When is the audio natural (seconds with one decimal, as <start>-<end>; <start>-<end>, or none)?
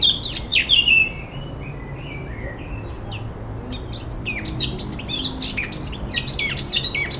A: 0.0-7.2